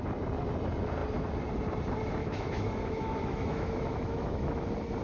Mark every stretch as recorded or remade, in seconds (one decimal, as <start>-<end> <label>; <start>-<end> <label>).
0.0-2.2 recorded; 2.2-4.6 remade; 4.6-5.0 recorded